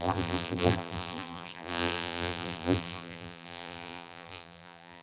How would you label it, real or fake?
fake